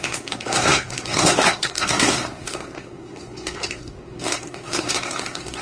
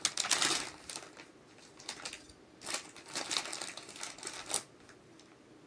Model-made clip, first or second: first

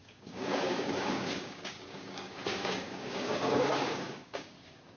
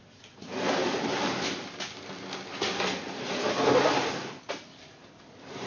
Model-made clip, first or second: first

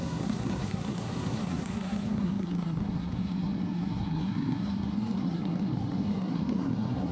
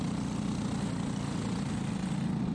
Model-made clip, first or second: first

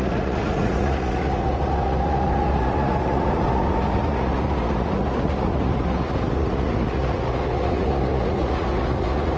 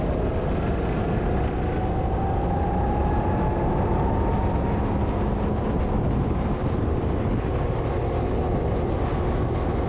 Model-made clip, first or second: first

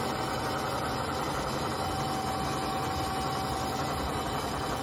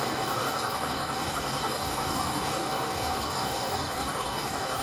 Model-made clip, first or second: second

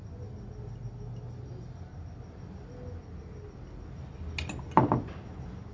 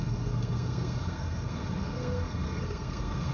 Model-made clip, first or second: second